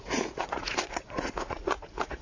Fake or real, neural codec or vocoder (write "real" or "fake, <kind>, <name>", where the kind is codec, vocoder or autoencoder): fake, vocoder, Vocos